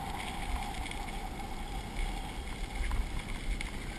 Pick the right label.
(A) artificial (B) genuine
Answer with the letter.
B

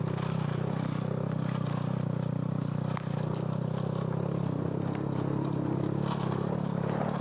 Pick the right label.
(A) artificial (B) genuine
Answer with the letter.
B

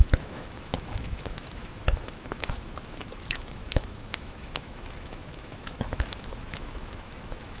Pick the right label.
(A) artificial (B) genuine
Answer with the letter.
A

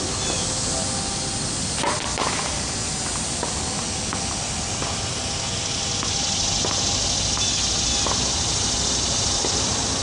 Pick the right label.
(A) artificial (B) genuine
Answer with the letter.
B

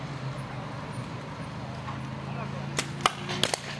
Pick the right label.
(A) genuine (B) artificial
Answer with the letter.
A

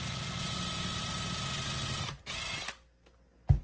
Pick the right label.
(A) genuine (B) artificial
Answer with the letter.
A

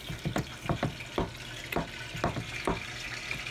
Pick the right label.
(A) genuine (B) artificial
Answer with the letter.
A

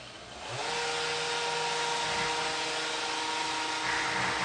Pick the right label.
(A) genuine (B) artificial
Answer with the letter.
A